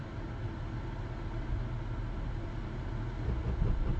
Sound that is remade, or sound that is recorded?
recorded